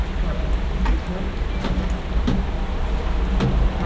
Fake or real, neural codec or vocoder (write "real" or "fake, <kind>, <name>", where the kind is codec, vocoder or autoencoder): real